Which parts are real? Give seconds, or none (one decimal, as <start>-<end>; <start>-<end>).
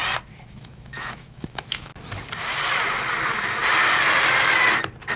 0.0-0.5; 1.9-5.2